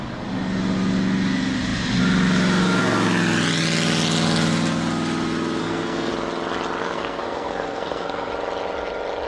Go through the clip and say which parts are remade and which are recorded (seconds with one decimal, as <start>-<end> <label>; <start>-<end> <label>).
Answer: 0.0-5.6 recorded; 5.6-6.1 remade; 6.1-6.8 recorded; 6.8-8.3 remade; 8.3-9.3 recorded